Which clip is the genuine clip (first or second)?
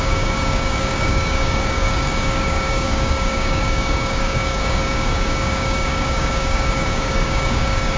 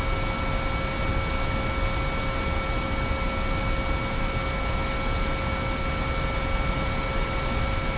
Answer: second